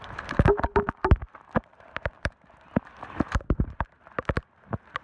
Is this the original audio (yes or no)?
no